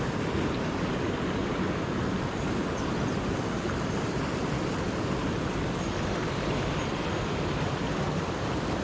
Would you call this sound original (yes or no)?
yes